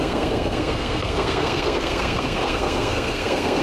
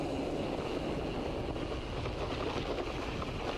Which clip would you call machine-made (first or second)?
first